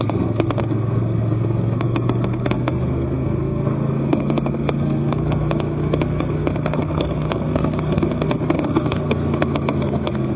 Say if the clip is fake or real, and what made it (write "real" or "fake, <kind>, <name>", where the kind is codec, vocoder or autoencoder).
fake, codec, SNAC